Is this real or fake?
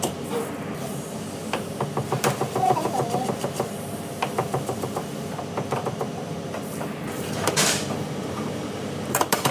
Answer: fake